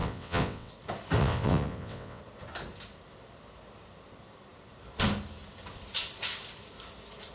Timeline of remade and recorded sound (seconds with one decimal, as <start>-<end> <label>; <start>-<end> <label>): 0.0-0.7 remade; 0.7-1.2 recorded; 1.2-2.2 remade; 2.2-7.3 recorded